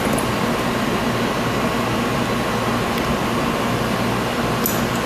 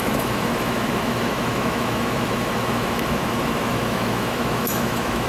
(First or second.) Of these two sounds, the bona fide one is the first